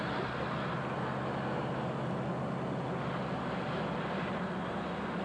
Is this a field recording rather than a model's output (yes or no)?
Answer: yes